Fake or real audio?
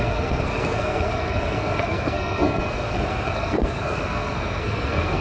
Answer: fake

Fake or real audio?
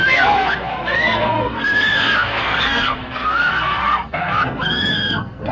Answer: fake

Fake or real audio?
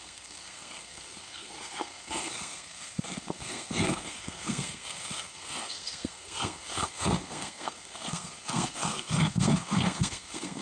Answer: fake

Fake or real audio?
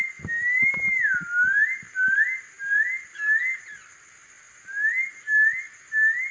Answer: real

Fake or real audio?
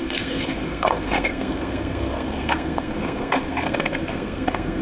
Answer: fake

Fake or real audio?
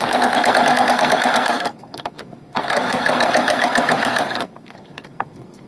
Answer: fake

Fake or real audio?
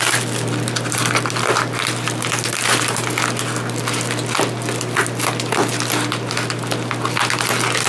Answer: real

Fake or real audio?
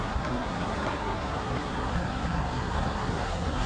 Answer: fake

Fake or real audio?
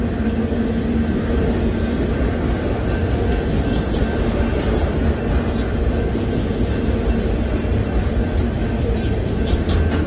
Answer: real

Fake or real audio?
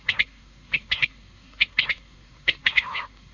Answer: fake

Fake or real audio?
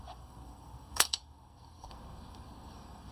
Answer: fake